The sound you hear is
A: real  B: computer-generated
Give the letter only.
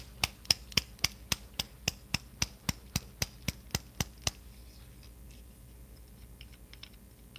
A